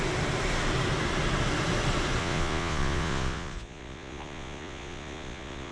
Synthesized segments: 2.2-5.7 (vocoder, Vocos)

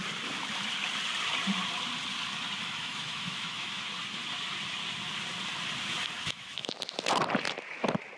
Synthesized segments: 2.6-3.8 (autoencoder, DAC-VAE); 6.1-6.7

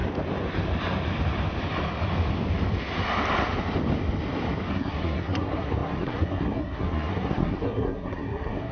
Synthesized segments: 4.7-8.7 (codec, SNAC)

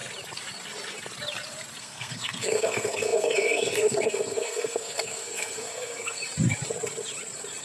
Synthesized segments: 1.8-6.2 (codec, SNAC)